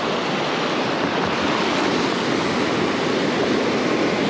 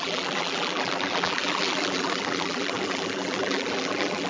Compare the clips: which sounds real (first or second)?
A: first